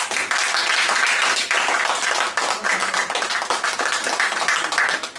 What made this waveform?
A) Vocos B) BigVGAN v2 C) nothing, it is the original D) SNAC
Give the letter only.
C